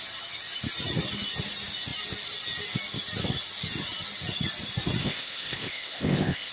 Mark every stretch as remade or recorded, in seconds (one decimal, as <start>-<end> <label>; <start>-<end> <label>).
0.0-5.0 recorded; 5.0-6.5 remade